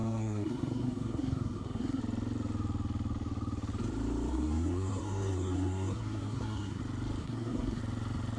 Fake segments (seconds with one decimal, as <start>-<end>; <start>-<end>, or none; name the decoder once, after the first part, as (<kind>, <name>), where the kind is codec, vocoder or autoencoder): 0.0-2.0 (codec, SNAC); 4.3-6.8; 7.2-7.8